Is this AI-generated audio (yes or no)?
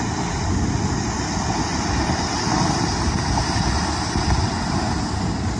no